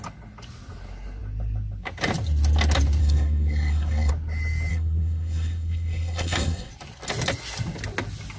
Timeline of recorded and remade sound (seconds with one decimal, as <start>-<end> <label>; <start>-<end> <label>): 0.0-3.0 recorded; 3.0-4.1 remade; 4.1-4.7 recorded; 4.7-6.7 remade; 6.7-8.4 recorded